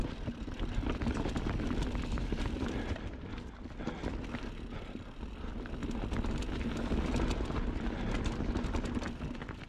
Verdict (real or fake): real